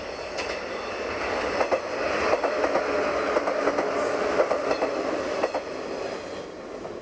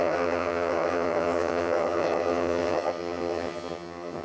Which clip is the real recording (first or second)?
first